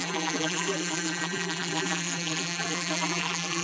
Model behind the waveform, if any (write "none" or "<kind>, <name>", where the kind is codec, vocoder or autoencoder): vocoder, BigVGAN v2